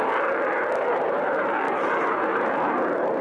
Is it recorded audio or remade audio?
recorded